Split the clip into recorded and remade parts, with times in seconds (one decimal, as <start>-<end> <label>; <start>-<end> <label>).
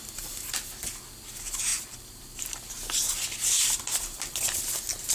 0.0-1.7 recorded; 1.7-2.4 remade; 2.4-3.6 recorded; 3.6-4.3 remade; 4.3-5.1 recorded